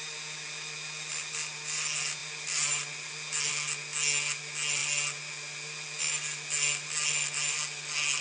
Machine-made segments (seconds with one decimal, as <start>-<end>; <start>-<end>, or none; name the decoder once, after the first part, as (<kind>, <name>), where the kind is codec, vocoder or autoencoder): none